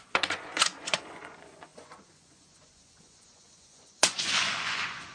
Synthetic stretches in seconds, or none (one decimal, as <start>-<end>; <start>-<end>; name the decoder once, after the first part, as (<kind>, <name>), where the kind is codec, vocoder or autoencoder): 0.0-5.1 (vocoder, Vocos)